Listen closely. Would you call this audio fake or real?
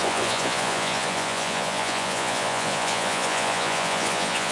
fake